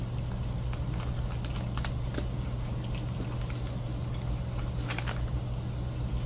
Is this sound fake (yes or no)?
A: no